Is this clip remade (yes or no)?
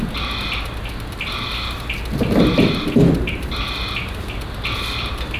no